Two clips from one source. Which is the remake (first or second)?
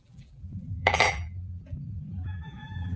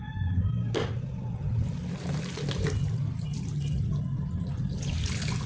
first